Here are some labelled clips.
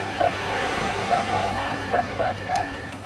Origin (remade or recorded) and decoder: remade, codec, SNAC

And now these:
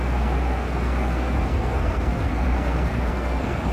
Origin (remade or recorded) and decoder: remade, codec, SNAC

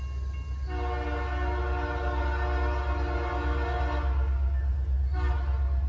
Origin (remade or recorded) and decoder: recorded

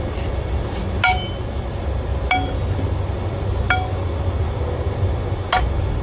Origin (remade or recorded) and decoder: recorded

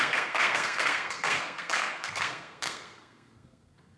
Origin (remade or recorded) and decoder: remade, codec, SNAC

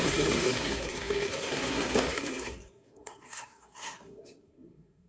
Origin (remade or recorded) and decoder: remade, codec, SNAC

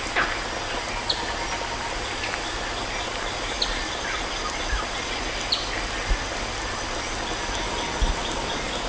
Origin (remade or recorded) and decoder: recorded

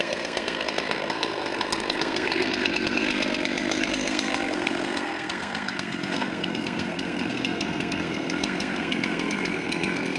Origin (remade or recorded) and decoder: remade, codec, SNAC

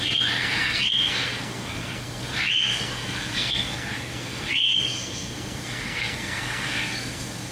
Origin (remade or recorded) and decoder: remade, codec, SNAC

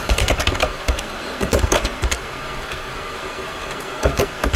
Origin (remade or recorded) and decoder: remade, codec, SNAC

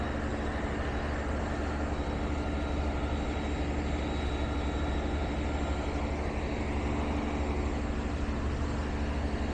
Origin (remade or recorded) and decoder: recorded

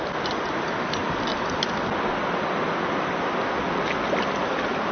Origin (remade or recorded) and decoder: recorded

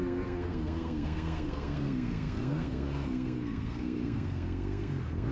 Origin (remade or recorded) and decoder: remade, codec, SNAC